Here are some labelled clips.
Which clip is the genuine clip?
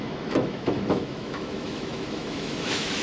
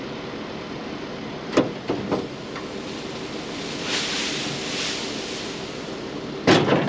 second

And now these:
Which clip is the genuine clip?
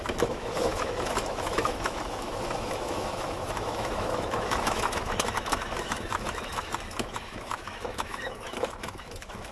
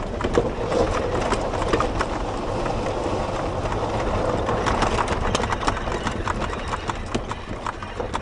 second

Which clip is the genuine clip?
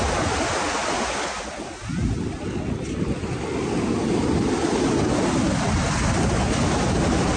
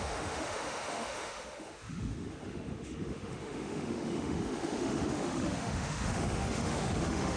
first